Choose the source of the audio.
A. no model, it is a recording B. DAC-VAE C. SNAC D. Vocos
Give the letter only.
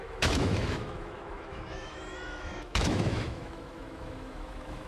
B